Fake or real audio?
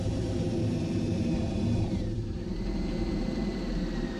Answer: fake